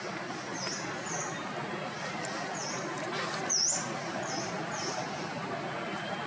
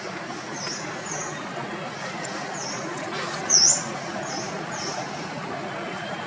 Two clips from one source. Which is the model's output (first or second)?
second